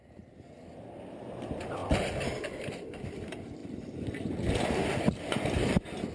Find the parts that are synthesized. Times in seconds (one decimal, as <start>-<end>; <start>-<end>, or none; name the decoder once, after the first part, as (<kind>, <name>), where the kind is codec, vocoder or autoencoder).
0.0-6.1 (vocoder, BigVGAN v2)

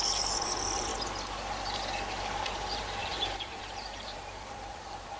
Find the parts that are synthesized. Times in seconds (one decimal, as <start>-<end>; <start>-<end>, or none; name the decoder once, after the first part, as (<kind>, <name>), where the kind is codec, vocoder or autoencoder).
0.0-0.9 (vocoder, BigVGAN v2); 2.2-5.2

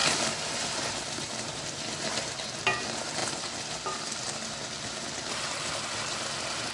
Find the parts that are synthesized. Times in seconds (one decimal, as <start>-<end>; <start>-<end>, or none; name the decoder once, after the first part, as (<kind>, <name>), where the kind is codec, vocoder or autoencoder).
none

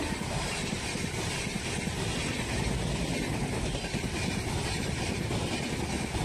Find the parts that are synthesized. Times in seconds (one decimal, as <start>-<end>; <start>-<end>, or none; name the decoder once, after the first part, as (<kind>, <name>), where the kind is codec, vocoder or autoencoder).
0.0-2.3 (vocoder, BigVGAN v2); 2.9-6.2

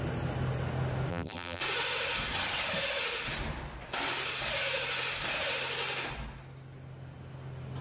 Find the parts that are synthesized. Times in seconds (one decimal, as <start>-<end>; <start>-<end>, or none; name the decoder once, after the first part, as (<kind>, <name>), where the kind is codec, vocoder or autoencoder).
1.1-1.6 (vocoder, BigVGAN v2)

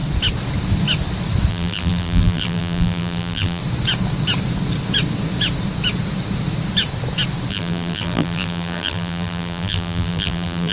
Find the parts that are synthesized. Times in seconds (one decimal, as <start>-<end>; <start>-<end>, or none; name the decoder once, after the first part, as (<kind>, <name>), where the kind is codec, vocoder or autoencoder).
1.5-3.6 (vocoder, BigVGAN v2); 7.5-10.7

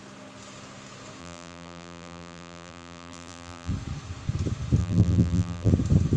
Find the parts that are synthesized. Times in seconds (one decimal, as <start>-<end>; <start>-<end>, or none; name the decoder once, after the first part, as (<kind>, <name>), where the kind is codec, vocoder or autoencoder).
1.2-3.7 (vocoder, BigVGAN v2); 4.8-5.7

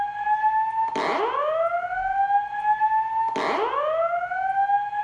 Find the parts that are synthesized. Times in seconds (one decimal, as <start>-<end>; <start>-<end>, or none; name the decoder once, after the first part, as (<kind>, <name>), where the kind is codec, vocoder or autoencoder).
none